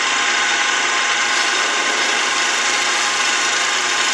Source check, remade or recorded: remade